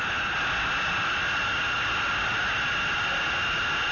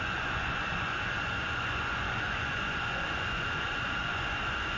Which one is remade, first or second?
second